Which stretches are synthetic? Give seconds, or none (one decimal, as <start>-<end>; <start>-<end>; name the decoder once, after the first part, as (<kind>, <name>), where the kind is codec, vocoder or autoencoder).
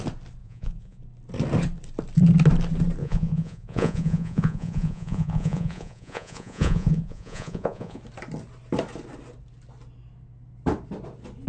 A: 0.4-1.0 (vocoder, Vocos); 3.0-8.0